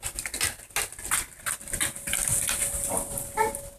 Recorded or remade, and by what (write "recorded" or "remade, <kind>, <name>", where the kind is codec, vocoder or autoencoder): recorded